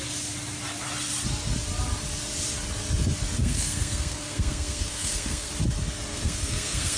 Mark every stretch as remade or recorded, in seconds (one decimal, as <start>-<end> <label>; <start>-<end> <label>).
0.0-3.4 recorded; 3.4-5.5 remade; 5.5-6.1 recorded; 6.1-7.0 remade